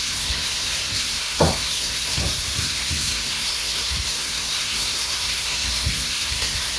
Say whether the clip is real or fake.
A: fake